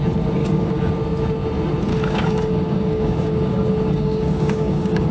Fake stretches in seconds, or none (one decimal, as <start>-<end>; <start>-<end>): 0.4-0.9; 1.9-5.1